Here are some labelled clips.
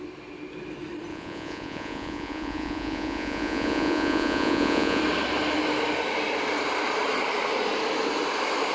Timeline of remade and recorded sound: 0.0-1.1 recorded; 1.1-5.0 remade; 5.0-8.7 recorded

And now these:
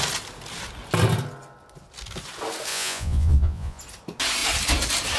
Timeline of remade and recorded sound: 0.0-2.7 recorded; 2.7-3.8 remade; 3.8-5.2 recorded